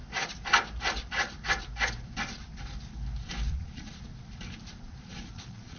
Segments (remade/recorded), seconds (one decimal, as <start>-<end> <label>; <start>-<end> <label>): 0.0-3.5 recorded; 3.5-4.1 remade; 4.1-5.0 recorded; 5.0-5.8 remade